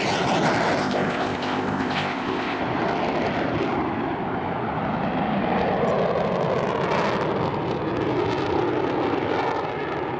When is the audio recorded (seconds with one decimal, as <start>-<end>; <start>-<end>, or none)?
0.0-0.8; 2.6-10.2